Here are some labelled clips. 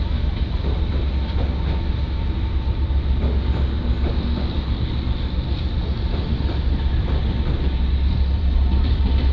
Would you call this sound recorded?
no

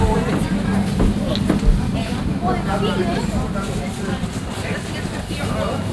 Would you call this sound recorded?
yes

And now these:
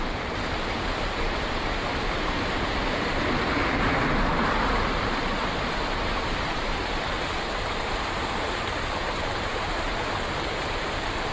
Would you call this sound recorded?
no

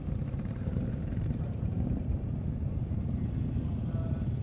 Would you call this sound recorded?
no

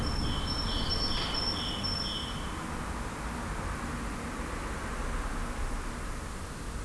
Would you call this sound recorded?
yes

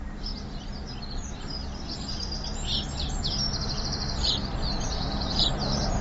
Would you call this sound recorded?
no